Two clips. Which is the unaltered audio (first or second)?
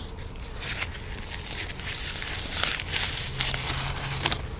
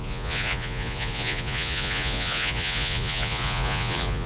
first